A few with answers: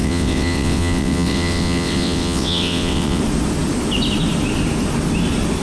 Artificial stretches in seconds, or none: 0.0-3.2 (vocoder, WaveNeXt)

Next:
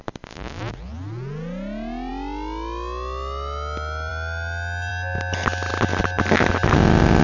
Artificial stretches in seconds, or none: none

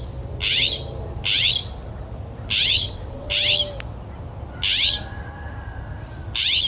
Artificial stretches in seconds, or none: 2.7-3.3 (vocoder, WaveNeXt)